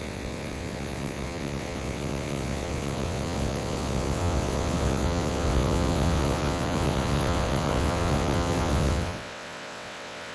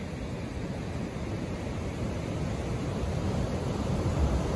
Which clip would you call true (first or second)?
second